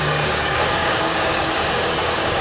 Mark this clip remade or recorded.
remade